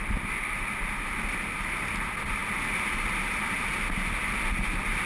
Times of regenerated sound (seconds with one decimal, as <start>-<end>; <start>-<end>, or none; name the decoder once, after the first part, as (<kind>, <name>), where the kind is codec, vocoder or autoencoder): none